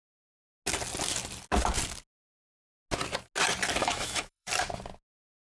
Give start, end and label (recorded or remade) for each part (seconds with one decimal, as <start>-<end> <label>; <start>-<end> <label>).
0.0-3.8 recorded; 3.8-4.5 remade; 4.5-5.4 recorded